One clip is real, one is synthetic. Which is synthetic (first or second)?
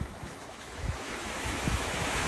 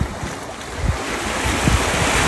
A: first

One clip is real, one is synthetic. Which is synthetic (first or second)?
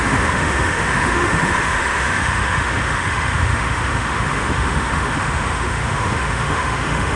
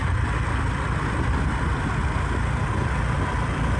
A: first